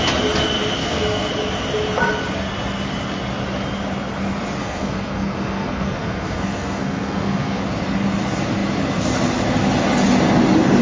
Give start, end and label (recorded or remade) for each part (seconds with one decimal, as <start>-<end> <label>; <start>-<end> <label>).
0.0-0.8 recorded; 0.8-1.3 remade; 1.3-4.6 recorded; 4.6-7.6 remade; 7.6-10.8 recorded